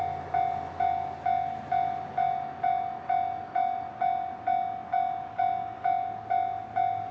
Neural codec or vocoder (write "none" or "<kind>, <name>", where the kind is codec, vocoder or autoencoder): none